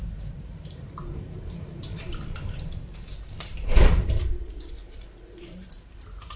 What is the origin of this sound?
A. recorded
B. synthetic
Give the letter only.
B